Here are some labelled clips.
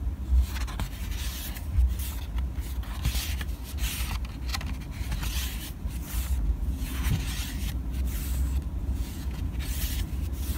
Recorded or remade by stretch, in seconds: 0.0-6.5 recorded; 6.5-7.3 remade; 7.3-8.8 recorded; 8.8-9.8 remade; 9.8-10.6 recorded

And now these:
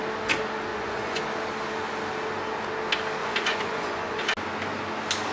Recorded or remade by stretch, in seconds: 0.0-0.7 recorded; 0.7-1.2 remade; 1.2-3.2 recorded; 3.2-4.2 remade; 4.2-5.3 recorded

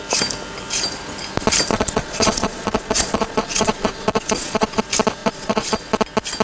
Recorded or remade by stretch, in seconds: 0.0-1.7 recorded; 1.7-4.8 remade; 4.8-5.2 recorded; 5.2-5.8 remade; 5.8-6.4 recorded

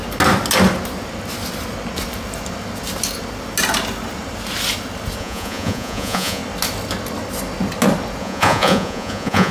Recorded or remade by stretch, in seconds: 0.0-5.2 recorded; 5.2-6.4 remade; 6.4-8.2 recorded; 8.2-9.5 remade

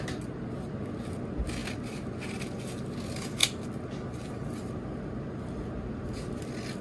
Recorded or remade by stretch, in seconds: 0.0-6.8 recorded

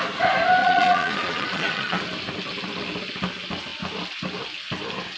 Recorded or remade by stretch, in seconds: 0.0-0.6 recorded; 0.6-2.0 remade; 2.0-5.2 recorded

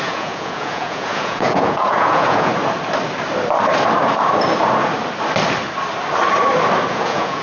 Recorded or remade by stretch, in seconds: 0.0-2.5 remade; 2.5-6.9 recorded; 6.9-7.4 remade